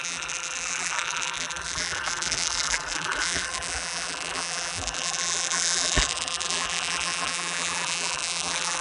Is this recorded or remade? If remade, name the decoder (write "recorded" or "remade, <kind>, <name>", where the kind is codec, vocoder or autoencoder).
remade, vocoder, BigVGAN v2